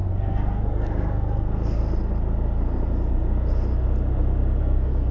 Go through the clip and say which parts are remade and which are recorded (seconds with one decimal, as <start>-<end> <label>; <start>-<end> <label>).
0.0-1.8 remade; 1.8-4.6 recorded; 4.6-5.1 remade